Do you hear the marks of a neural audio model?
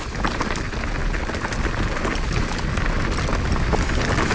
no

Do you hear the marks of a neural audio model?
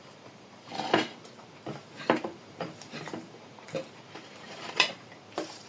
yes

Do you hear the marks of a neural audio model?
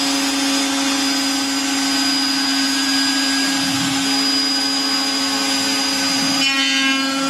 no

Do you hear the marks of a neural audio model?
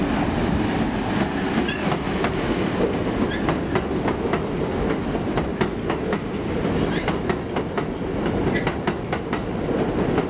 no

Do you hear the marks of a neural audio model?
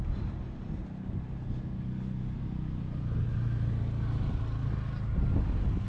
no